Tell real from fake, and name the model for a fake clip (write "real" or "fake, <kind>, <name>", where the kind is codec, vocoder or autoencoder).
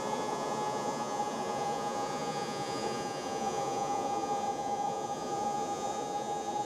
fake, vocoder, Vocos